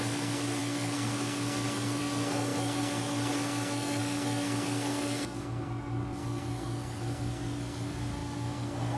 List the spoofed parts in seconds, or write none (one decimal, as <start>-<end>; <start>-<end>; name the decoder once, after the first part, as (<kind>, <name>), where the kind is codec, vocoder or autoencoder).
0.0-9.0 (codec, SNAC)